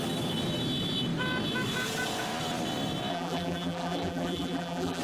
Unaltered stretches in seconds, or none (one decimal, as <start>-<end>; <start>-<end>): 0.0-3.1